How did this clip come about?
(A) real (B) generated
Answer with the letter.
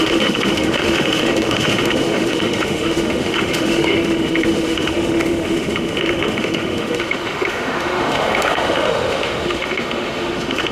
B